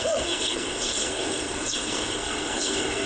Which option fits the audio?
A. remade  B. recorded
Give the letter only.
A